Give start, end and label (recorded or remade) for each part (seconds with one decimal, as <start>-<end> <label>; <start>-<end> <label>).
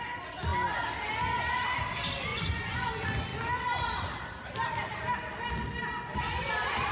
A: 0.0-2.3 recorded; 2.3-2.9 remade; 2.9-6.9 recorded